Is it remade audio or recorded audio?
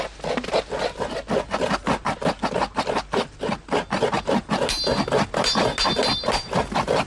recorded